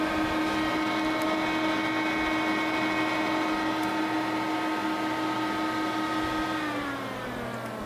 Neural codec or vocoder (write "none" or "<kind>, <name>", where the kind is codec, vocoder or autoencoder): none